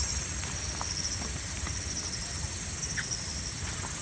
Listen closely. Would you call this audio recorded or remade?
recorded